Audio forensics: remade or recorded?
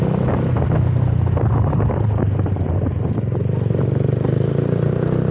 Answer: recorded